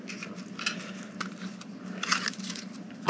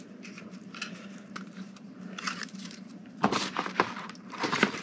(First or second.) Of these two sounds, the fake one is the second